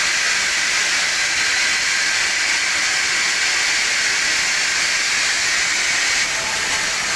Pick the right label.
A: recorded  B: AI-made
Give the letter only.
A